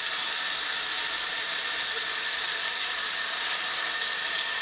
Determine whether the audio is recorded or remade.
recorded